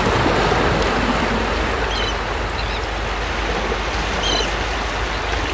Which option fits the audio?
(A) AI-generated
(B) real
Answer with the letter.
B